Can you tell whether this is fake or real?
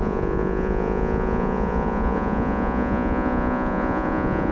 fake